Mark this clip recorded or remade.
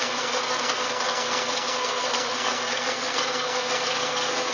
remade